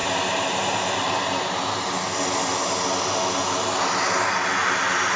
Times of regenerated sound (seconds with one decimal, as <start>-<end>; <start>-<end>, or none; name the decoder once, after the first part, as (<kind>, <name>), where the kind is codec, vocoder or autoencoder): none

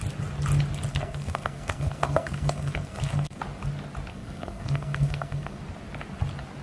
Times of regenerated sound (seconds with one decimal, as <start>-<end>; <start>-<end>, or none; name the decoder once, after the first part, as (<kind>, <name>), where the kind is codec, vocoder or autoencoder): 0.9-3.4 (codec, SNAC); 4.1-5.6